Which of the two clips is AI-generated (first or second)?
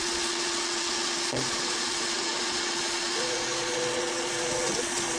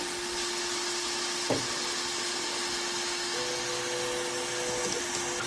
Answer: first